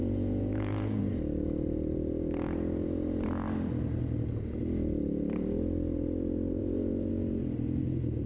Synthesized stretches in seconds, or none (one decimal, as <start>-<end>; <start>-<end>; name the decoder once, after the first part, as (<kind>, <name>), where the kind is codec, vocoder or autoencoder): 0.0-1.0 (vocoder, Vocos); 6.6-7.1